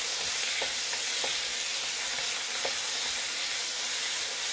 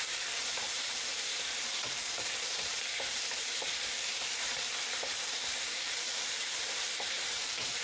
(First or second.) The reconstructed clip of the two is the second